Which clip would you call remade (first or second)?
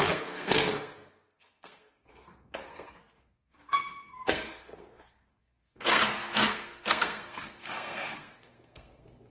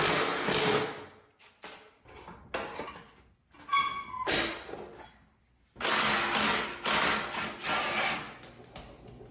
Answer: first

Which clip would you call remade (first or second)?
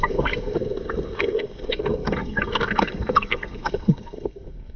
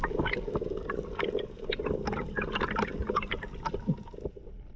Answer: first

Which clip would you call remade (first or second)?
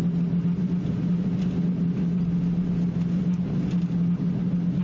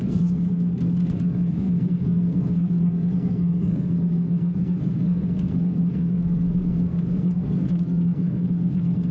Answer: second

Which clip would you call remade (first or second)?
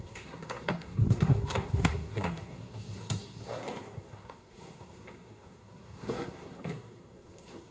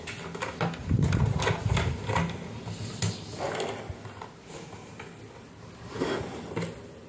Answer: first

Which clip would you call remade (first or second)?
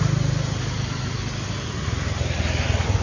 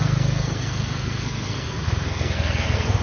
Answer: second